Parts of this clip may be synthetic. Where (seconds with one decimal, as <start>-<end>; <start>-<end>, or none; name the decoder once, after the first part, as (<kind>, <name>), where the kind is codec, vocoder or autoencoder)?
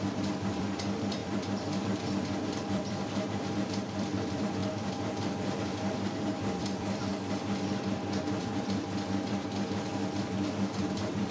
0.0-7.1 (vocoder, BigVGAN v2); 8.4-9.9; 10.8-11.3